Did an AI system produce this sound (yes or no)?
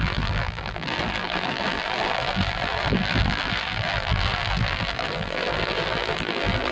yes